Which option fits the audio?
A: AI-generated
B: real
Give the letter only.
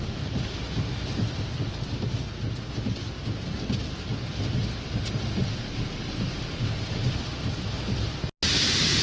B